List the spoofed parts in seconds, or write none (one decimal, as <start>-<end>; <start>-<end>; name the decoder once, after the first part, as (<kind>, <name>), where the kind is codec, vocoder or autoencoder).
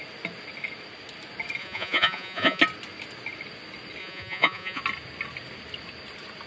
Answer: 1.6-2.6 (vocoder, Vocos); 4.0-4.8